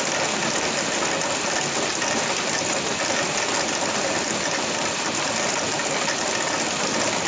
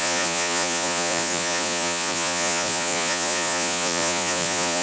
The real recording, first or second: first